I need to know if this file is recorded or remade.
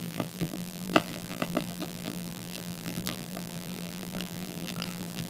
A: remade